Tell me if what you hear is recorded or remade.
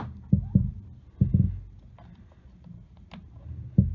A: recorded